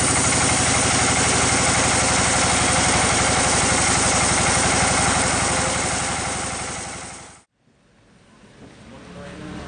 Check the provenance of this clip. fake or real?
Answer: real